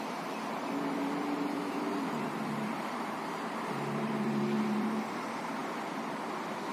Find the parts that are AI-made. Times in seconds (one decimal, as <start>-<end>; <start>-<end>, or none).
0.0-6.7